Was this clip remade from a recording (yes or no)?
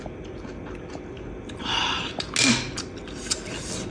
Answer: no